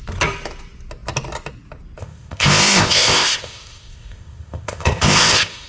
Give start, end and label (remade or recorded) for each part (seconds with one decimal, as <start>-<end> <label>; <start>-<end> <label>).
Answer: 0.0-2.0 recorded; 2.0-5.7 remade

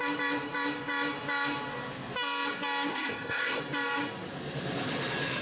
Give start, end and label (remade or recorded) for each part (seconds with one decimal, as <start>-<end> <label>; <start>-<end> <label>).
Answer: 0.0-2.9 recorded; 2.9-3.6 remade; 3.6-5.4 recorded

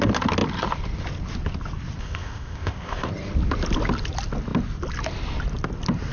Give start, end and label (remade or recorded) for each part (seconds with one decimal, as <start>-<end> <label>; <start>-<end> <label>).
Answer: 0.0-2.0 recorded; 2.0-3.1 remade; 3.1-6.1 recorded

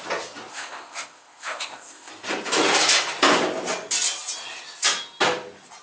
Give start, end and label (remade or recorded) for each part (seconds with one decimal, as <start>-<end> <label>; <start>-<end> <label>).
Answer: 0.0-0.5 recorded; 0.5-2.1 remade; 2.1-5.8 recorded

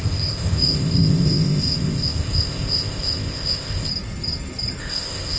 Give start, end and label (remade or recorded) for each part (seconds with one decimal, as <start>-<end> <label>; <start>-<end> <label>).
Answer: 0.0-3.9 remade; 3.9-4.8 recorded; 4.8-5.4 remade

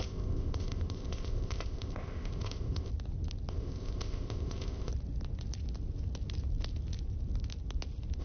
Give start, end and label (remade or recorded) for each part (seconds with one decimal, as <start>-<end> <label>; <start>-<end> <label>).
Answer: 0.0-2.9 remade; 2.9-3.5 recorded; 3.5-4.9 remade; 4.9-8.2 recorded

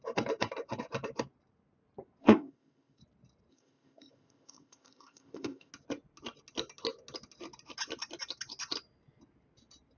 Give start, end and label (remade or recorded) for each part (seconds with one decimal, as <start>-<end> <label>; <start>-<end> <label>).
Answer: 0.0-2.2 recorded; 2.2-3.0 remade; 3.0-3.5 recorded; 3.5-5.7 remade; 5.7-10.0 recorded

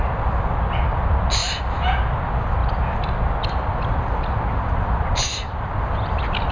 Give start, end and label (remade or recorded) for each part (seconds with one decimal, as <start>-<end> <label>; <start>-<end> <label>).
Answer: 0.0-6.5 recorded